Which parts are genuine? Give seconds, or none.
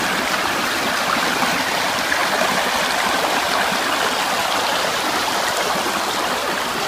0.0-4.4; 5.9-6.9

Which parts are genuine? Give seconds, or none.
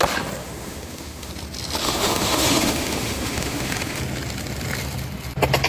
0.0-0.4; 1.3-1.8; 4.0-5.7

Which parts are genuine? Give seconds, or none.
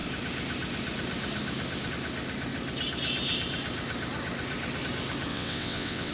0.0-5.3